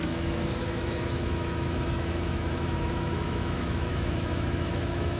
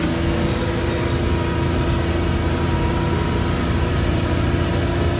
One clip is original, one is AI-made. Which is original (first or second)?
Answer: second